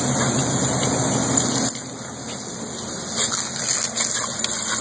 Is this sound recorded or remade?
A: recorded